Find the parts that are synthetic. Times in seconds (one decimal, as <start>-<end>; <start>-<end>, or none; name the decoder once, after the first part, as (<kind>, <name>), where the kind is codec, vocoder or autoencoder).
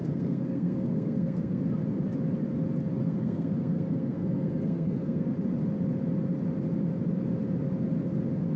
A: 0.0-1.6 (codec, SNAC); 3.0-5.3